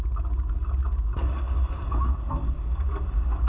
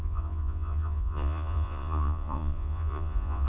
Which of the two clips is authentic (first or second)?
first